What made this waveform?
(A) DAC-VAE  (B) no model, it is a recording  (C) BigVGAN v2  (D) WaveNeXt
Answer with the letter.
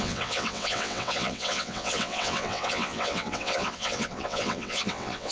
D